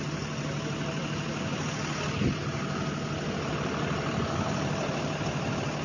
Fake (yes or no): no